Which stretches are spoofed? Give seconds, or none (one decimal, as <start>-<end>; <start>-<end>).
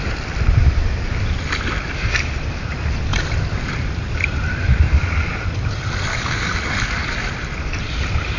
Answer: 4.7-5.2; 6.1-7.3